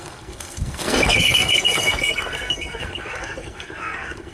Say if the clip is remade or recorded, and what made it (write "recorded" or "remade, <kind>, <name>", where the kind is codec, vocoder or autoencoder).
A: remade, codec, SNAC